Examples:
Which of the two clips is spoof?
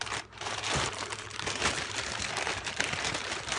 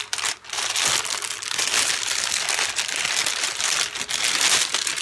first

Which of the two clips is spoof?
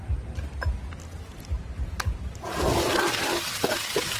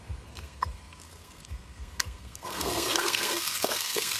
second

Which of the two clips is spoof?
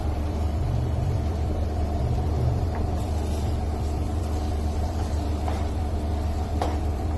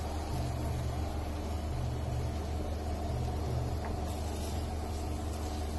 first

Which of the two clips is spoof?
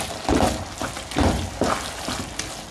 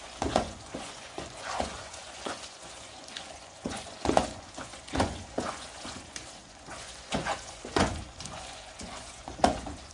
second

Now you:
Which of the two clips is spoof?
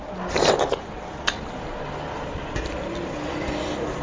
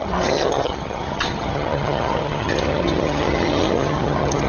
second